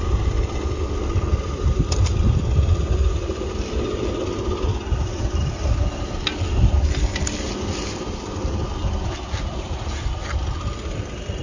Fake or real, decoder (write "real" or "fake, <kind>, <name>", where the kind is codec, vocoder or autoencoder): real